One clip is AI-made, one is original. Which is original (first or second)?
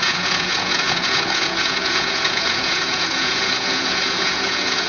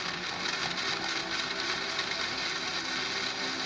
second